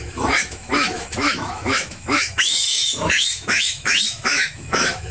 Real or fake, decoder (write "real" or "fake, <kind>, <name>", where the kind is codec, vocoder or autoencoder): fake, autoencoder, DAC-VAE